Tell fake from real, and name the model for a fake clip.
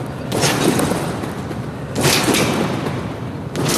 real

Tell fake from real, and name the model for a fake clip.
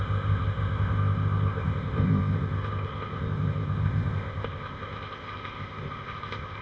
fake, codec, ZipCodec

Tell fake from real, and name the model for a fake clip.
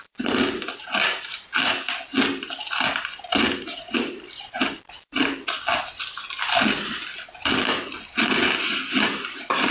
real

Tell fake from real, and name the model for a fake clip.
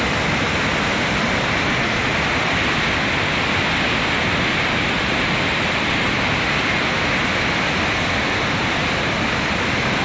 real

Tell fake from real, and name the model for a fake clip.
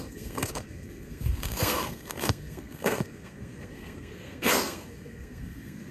fake, codec, SNAC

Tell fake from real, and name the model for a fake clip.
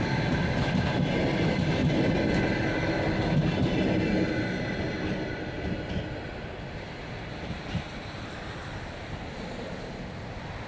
real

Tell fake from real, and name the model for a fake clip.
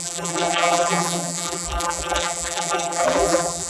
fake, vocoder, BigVGAN v2